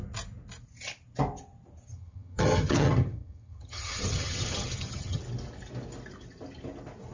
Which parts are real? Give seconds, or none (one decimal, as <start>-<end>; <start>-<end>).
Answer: 0.0-1.9; 5.2-7.1